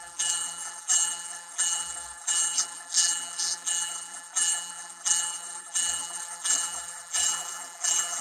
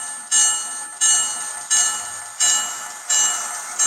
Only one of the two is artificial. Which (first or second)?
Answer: first